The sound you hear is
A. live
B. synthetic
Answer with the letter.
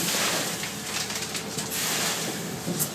A